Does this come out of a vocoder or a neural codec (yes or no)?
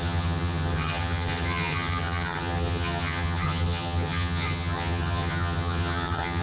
yes